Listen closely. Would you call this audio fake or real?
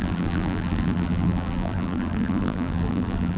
fake